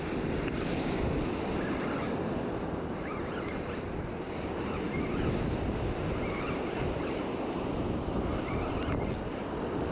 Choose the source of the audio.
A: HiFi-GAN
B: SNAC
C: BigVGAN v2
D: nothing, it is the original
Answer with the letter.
D